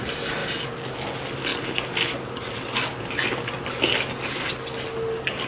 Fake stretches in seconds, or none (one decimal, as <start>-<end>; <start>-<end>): none

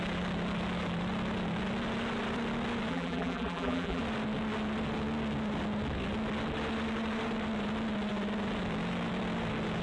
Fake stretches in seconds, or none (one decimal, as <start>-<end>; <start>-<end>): 2.9-4.0

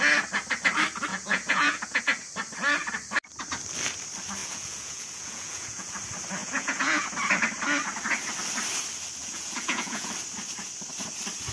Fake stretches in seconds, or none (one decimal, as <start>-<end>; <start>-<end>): 1.1-2.0; 4.4-5.9; 6.4-7.1; 9.2-10.1

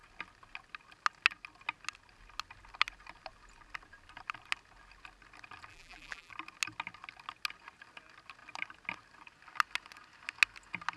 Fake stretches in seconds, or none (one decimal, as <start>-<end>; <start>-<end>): 5.7-6.3

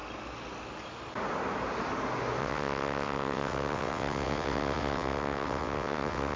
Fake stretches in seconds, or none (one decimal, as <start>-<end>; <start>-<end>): 2.4-6.4